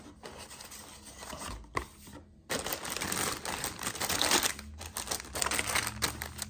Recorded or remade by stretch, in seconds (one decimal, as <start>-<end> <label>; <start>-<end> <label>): 0.0-6.5 recorded